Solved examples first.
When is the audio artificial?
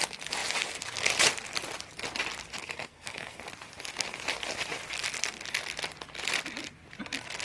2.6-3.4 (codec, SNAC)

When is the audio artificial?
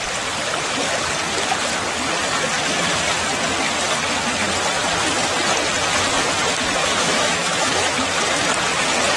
6.8-8.0 (autoencoder, DAC-VAE)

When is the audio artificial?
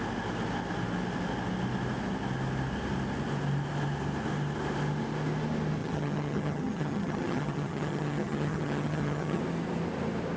5.8-9.4 (vocoder, HiFi-GAN)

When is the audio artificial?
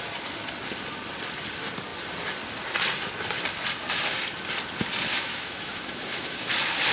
5.1-6.5 (autoencoder, DAC-VAE)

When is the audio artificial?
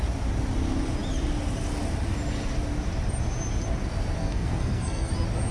4.2-5.1 (codec, SNAC)